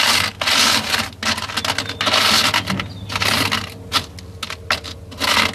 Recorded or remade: recorded